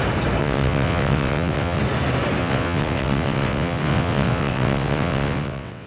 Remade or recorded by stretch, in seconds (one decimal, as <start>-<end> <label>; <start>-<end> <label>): 0.0-0.4 recorded; 0.4-1.8 remade; 1.8-2.4 recorded; 2.4-5.9 remade